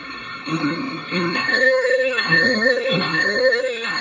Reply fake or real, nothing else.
fake